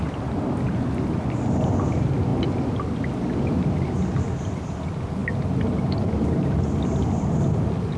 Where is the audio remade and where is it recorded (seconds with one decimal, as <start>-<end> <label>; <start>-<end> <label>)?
0.0-8.0 recorded